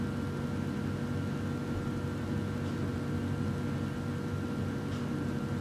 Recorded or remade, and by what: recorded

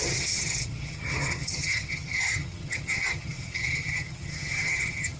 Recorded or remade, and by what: remade, vocoder, HiFi-GAN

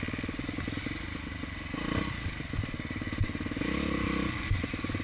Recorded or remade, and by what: recorded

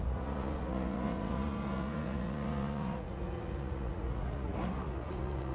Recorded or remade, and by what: remade, vocoder, Vocos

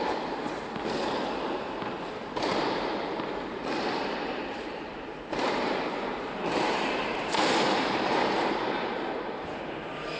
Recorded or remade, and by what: remade, vocoder, BigVGAN v2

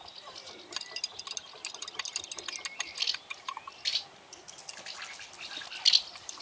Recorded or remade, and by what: recorded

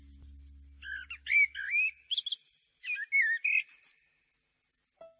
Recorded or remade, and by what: recorded